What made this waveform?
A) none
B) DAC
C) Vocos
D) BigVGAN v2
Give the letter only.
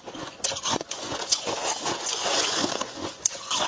C